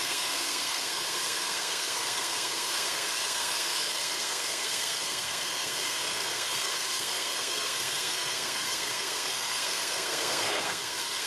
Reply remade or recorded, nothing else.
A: remade